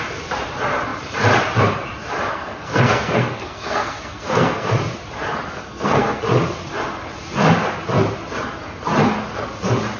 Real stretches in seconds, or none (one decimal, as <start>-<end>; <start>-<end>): 0.0-2.3; 4.7-5.6; 6.2-10.0